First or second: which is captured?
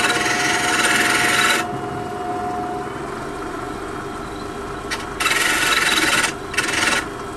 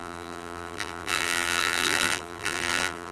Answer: first